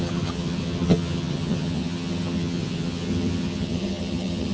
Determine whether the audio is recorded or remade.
remade